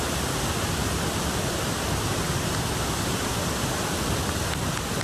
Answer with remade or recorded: recorded